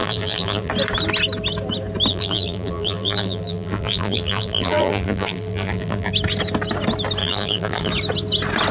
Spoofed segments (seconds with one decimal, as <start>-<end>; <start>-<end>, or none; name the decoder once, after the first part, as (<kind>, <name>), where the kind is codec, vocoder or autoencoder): 0.0-0.7 (vocoder, BigVGAN v2); 2.1-6.1; 7.2-7.9